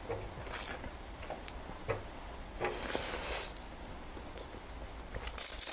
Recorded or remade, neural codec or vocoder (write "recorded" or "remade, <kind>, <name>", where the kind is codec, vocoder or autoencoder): recorded